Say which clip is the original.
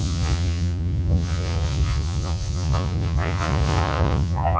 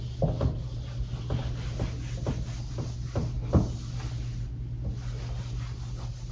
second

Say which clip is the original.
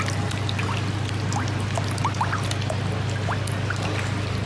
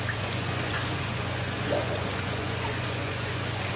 first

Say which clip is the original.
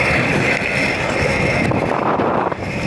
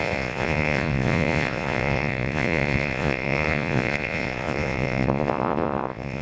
first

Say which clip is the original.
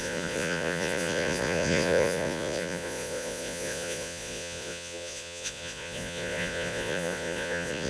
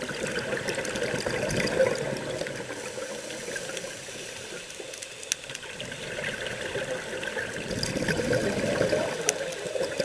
second